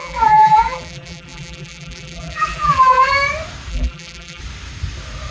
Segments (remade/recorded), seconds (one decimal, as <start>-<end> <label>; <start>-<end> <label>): 0.0-3.1 remade; 3.1-3.7 recorded; 3.7-4.4 remade; 4.4-5.3 recorded